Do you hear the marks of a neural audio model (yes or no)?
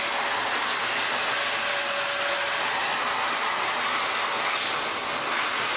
no